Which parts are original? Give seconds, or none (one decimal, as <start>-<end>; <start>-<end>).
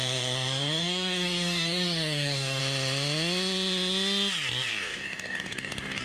2.6-4.7